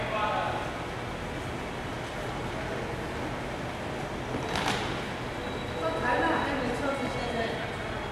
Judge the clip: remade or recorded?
recorded